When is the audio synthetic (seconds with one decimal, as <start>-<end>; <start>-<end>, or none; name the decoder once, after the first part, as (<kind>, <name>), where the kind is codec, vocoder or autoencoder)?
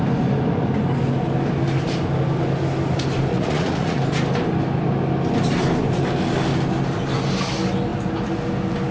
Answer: 3.3-4.0 (vocoder, Vocos)